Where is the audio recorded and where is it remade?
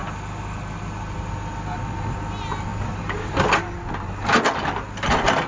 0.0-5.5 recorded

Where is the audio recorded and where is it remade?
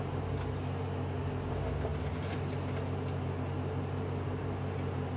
0.0-5.2 recorded